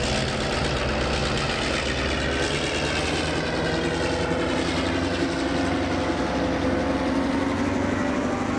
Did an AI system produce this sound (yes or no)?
no